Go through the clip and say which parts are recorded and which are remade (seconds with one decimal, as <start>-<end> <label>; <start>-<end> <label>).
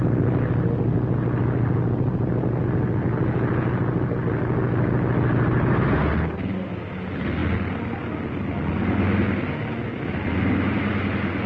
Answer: 0.0-11.5 recorded